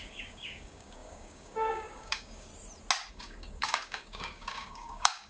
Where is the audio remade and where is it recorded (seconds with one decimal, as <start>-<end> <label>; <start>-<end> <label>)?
0.0-2.5 remade; 2.5-3.1 recorded; 3.1-5.3 remade